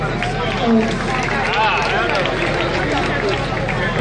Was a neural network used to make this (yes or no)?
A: no